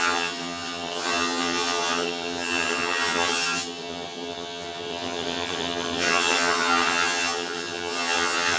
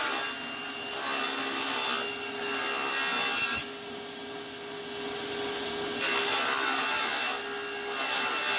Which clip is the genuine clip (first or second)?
second